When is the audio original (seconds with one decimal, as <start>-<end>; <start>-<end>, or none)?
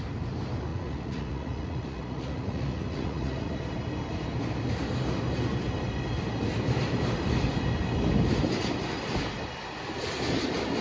0.0-0.7; 3.6-10.8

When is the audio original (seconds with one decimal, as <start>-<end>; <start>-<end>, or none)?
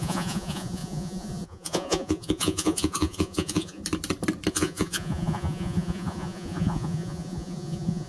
3.8-4.5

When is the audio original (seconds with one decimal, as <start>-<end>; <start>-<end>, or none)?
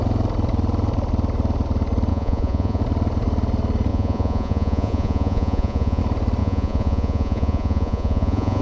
0.0-2.1; 2.8-3.9; 6.0-6.4